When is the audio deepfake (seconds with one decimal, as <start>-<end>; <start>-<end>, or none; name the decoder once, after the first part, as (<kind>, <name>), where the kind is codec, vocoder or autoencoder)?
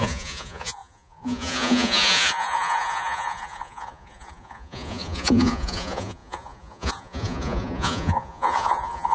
0.0-9.1 (vocoder, Vocos)